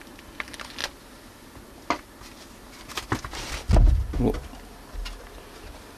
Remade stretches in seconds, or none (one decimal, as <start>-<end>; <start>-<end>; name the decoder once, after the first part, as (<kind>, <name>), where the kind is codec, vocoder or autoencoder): none